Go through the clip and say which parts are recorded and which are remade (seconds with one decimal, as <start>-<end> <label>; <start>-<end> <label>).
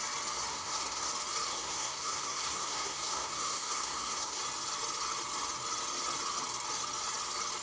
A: 0.0-0.5 recorded; 0.5-1.1 remade; 1.1-1.5 recorded; 1.5-4.4 remade; 4.4-7.6 recorded